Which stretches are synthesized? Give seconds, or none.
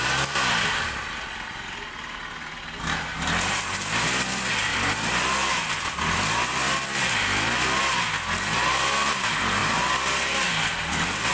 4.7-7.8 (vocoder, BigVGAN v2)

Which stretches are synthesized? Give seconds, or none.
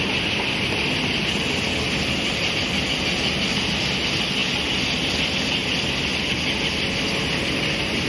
none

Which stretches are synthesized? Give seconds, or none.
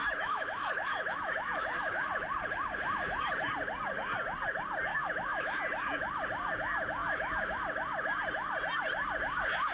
0.0-2.1 (autoencoder, DAC-VAE); 4.9-5.6; 7.0-7.6